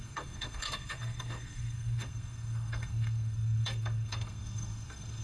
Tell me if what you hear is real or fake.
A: fake